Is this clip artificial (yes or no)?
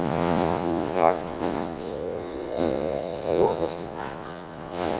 yes